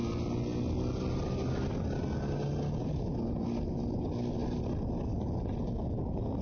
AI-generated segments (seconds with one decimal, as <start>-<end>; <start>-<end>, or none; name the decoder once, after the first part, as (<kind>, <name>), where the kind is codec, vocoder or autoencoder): none